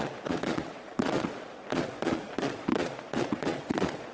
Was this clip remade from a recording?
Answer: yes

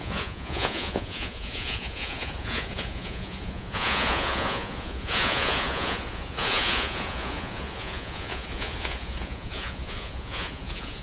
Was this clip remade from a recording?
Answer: yes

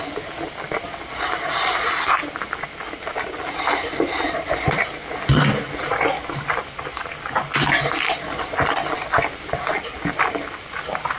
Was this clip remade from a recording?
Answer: no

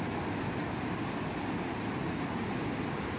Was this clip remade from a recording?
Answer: no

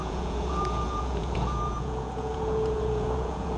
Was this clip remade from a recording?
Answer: yes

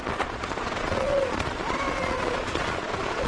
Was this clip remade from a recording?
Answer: yes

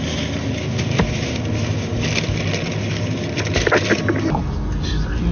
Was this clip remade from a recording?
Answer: no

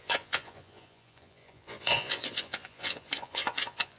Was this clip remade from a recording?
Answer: yes